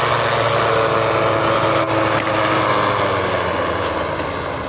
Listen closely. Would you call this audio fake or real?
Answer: real